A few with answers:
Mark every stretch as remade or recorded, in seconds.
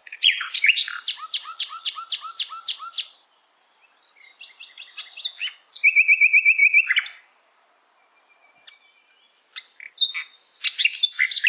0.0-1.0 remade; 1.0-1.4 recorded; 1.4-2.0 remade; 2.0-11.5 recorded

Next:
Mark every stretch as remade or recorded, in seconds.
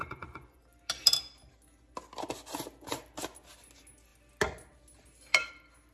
0.0-0.6 remade; 0.6-5.9 recorded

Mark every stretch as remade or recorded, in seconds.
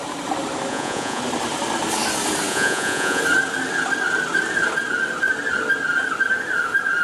0.0-0.7 recorded; 0.7-1.2 remade; 1.2-2.5 recorded; 2.5-3.2 remade; 3.2-7.0 recorded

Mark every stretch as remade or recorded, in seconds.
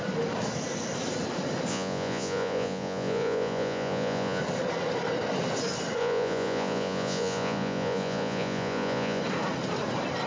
0.0-1.7 recorded; 1.7-4.4 remade; 4.4-6.0 recorded; 6.0-9.2 remade; 9.2-10.3 recorded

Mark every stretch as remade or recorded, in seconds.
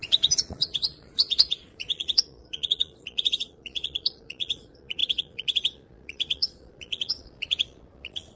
0.0-8.4 remade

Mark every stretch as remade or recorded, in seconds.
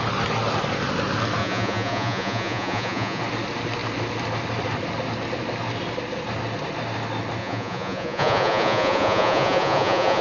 0.0-1.4 recorded; 1.4-3.2 remade; 3.2-7.4 recorded; 7.4-10.2 remade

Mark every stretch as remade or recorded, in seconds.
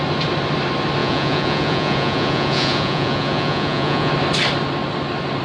0.0-1.0 recorded; 1.0-4.1 remade; 4.1-5.4 recorded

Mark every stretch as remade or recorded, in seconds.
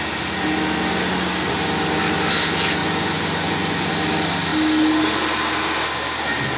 0.0-2.8 recorded; 2.8-3.9 remade; 3.9-6.6 recorded